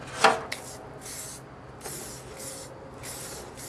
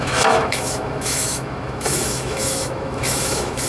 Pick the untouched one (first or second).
first